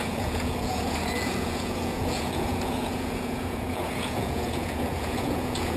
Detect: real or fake fake